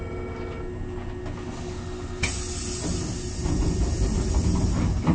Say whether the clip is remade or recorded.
recorded